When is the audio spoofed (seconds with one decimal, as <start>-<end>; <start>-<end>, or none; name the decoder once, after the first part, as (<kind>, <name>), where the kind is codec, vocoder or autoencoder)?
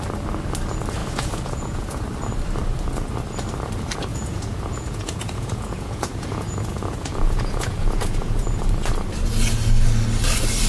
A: 1.0-2.0 (vocoder, Vocos); 4.1-8.6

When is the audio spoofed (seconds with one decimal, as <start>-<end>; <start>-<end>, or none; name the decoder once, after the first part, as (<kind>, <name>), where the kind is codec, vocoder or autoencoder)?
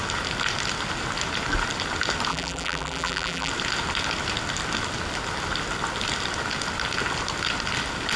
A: 2.3-3.5 (vocoder, BigVGAN v2)